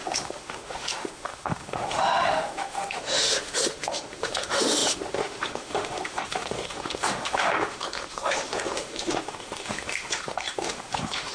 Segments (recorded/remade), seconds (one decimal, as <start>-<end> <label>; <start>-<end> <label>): 0.0-11.3 remade